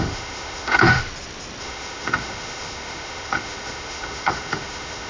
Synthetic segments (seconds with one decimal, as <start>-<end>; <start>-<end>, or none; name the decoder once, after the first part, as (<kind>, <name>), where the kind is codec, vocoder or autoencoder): 0.0-1.0 (autoencoder, DAC-VAE); 1.6-5.1